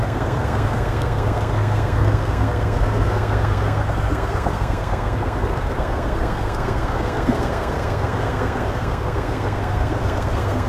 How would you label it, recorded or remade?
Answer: remade